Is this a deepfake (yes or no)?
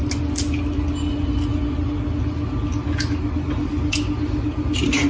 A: no